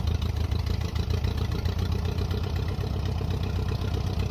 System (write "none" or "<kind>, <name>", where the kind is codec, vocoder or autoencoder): none